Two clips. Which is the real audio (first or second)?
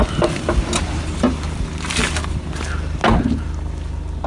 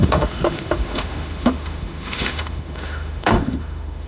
first